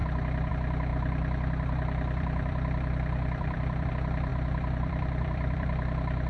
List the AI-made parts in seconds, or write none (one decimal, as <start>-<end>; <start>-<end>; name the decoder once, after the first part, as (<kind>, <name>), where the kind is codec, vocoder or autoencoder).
0.9-3.9 (vocoder, BigVGAN v2); 4.3-6.3